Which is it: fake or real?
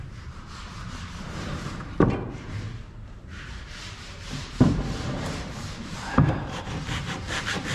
fake